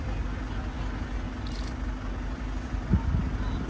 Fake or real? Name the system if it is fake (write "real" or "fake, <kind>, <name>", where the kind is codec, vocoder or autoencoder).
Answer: real